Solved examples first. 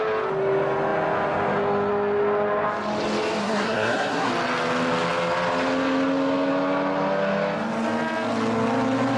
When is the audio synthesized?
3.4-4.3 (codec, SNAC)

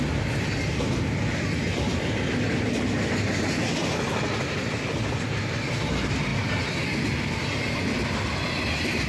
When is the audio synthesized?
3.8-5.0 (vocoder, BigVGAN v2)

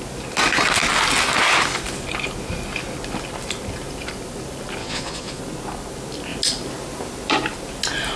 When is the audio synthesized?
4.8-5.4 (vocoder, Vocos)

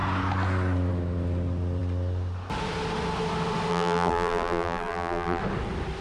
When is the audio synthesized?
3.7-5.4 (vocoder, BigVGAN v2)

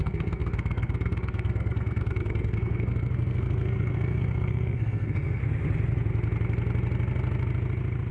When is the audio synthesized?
0.0-5.4 (codec, SNAC)

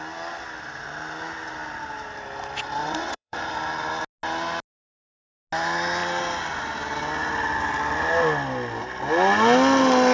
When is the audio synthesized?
2.8-3.4 (vocoder, WaveNeXt)